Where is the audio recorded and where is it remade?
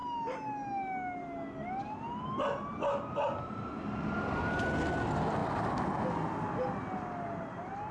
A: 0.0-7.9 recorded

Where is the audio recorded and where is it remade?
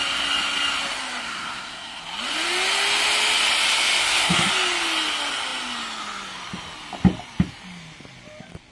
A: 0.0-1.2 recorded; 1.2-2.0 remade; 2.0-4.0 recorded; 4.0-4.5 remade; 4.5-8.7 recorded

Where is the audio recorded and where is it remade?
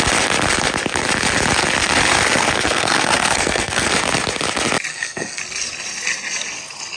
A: 0.0-2.1 recorded; 2.1-3.9 remade; 3.9-4.9 recorded; 4.9-5.4 remade; 5.4-7.0 recorded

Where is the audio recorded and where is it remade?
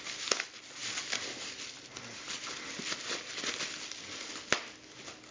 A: 0.0-5.3 recorded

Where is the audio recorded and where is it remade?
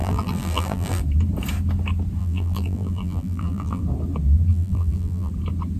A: 0.0-1.0 remade; 1.0-2.2 recorded; 2.2-3.8 remade; 3.8-4.5 recorded; 4.5-5.3 remade; 5.3-5.8 recorded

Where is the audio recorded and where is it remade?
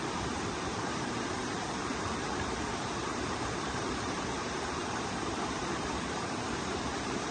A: 0.0-7.3 remade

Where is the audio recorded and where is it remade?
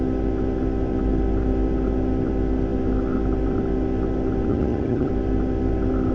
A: 0.0-4.5 recorded; 4.5-5.1 remade; 5.1-6.1 recorded